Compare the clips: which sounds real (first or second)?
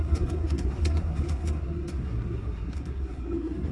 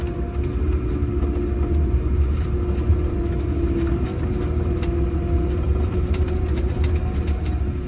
second